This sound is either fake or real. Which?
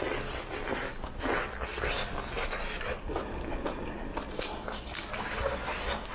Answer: real